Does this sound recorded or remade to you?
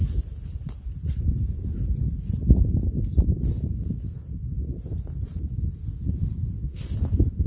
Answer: recorded